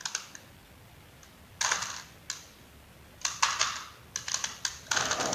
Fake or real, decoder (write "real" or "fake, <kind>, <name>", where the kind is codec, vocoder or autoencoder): real